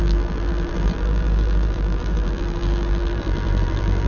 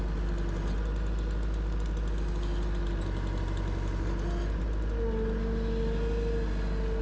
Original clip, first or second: second